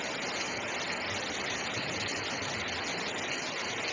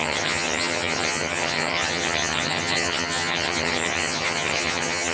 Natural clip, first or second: first